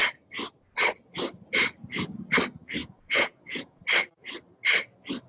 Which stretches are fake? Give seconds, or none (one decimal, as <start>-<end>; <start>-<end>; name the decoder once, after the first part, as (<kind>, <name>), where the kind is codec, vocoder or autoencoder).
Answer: 2.8-3.8 (vocoder, Vocos)